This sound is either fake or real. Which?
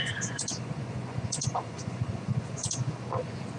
fake